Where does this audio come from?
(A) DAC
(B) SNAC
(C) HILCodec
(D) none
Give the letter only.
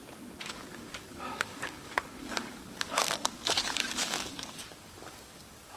A